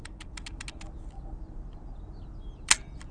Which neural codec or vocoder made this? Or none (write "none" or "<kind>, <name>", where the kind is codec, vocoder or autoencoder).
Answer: none